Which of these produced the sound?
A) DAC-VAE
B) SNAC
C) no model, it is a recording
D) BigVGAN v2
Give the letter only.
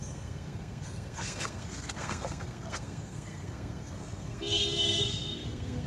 B